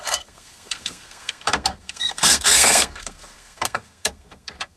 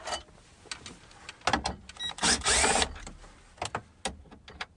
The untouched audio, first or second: second